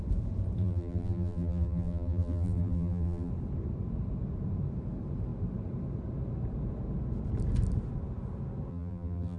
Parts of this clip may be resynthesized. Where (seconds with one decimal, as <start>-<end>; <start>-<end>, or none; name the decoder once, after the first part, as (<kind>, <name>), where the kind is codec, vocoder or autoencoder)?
0.6-3.3 (vocoder, BigVGAN v2); 8.7-9.4